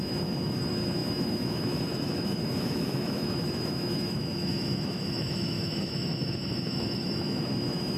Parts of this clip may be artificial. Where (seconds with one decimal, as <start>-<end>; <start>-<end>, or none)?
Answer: 0.0-8.0